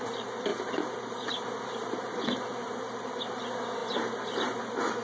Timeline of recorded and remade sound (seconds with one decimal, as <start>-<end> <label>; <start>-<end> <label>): 0.0-0.5 recorded; 0.5-3.2 remade; 3.2-5.0 recorded